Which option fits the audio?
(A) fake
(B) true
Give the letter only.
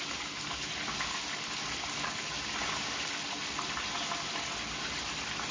B